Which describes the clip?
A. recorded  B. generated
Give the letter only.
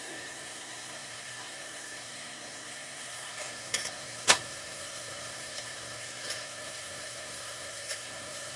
B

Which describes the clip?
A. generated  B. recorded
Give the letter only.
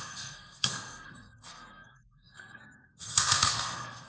A